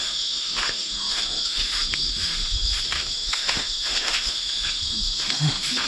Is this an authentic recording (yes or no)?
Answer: no